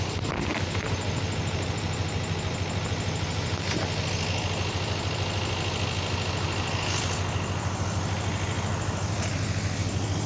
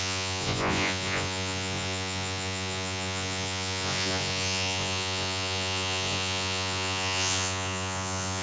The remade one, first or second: second